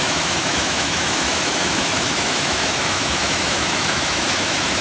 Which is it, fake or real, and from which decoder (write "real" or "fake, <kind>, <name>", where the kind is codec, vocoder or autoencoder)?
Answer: fake, autoencoder, DAC-VAE